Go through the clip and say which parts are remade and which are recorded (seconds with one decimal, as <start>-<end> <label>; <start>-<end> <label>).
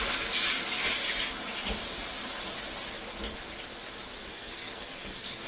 0.0-4.3 recorded; 4.3-5.5 remade